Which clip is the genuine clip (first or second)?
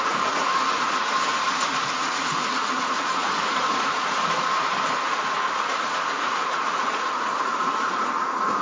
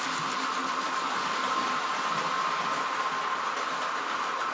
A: second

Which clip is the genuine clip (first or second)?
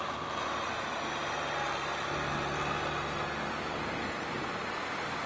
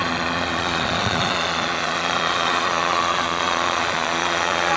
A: first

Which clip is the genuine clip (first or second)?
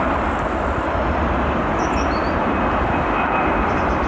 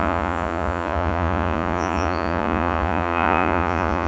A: first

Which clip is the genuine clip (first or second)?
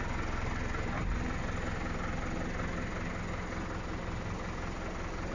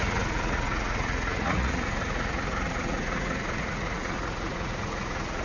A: first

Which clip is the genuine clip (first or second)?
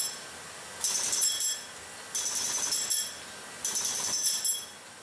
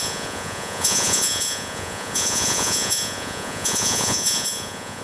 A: first